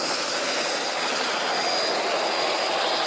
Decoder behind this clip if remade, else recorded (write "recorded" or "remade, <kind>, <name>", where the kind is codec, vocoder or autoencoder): recorded